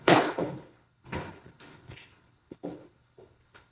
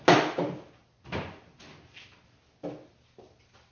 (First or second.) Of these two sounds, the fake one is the first